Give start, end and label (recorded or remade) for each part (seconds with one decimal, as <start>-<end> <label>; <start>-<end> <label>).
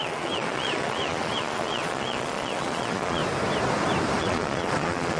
0.0-3.2 remade; 3.2-4.2 recorded; 4.2-5.2 remade